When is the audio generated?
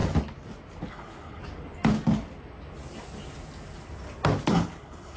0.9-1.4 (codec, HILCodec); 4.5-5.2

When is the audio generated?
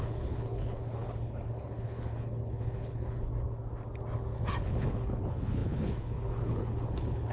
0.0-3.3 (codec, HILCodec); 4.6-7.3